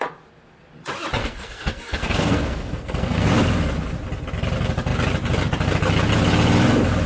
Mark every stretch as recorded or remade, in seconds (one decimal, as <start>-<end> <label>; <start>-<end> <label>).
0.0-1.2 recorded; 1.2-3.3 remade; 3.3-7.1 recorded